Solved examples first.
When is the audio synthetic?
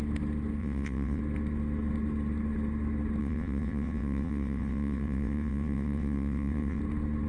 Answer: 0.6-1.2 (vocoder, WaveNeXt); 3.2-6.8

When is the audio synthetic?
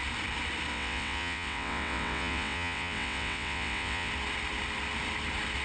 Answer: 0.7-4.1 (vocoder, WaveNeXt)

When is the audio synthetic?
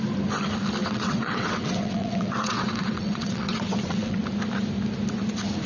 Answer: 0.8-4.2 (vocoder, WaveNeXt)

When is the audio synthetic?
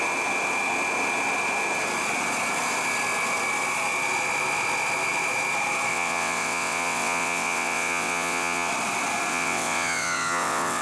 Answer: 5.9-8.7 (vocoder, WaveNeXt); 9.3-10.8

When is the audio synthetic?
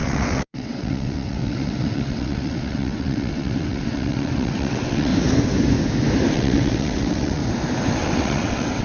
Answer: 0.0-5.1 (vocoder, WaveNeXt); 6.3-7.4; 7.9-8.8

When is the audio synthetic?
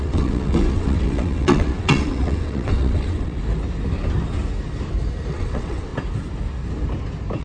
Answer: 0.0-3.4 (vocoder, WaveNeXt); 5.3-5.9